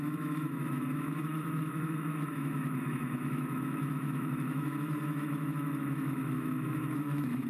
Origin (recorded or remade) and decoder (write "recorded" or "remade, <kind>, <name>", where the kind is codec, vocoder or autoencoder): remade, autoencoder, DAC-VAE